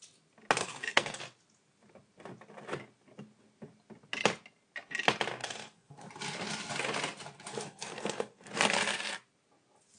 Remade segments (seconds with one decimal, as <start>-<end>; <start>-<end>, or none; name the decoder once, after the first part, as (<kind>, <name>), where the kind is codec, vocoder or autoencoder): 0.6-1.2 (codec, SNAC); 5.4-6.1; 7.5-8.5